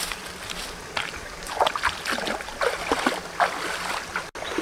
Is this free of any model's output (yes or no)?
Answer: yes